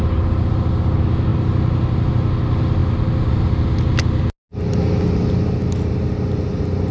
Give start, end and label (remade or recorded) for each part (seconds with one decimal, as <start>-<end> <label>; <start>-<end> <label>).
0.0-6.9 recorded